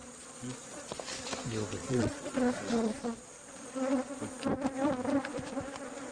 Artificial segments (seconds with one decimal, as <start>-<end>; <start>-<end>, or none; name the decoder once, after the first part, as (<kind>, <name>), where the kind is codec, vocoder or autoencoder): 0.0-1.0 (vocoder, Vocos); 1.8-4.2